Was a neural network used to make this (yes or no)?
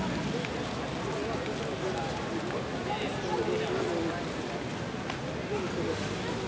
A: no